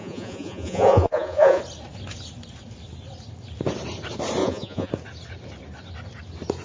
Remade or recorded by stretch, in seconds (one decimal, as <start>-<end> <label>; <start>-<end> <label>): 0.0-1.6 remade; 1.6-4.4 recorded; 4.4-4.9 remade; 4.9-6.6 recorded

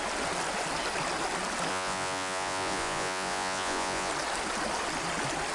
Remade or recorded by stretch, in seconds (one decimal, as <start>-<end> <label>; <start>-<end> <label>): 0.0-1.7 recorded; 1.7-4.1 remade; 4.1-5.5 recorded